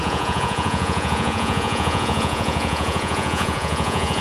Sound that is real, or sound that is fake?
fake